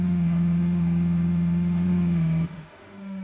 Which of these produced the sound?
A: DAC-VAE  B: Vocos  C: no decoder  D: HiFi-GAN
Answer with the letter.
A